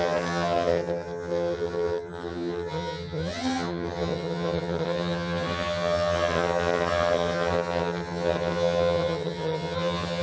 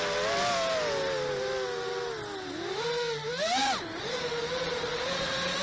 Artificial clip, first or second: first